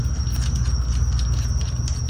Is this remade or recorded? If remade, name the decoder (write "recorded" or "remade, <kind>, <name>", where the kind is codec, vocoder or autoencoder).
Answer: recorded